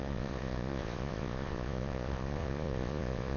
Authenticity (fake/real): fake